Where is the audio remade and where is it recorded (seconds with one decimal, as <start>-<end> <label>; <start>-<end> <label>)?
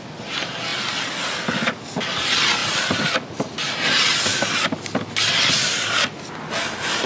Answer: 0.0-7.1 recorded